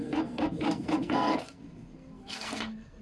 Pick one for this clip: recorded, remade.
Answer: remade